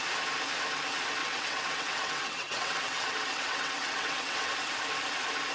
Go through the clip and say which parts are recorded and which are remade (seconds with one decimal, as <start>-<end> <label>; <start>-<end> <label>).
0.0-1.2 recorded; 1.2-4.5 remade; 4.5-5.5 recorded